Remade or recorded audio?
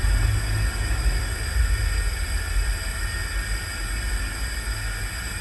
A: recorded